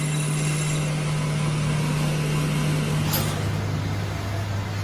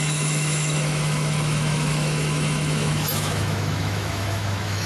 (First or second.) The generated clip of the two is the second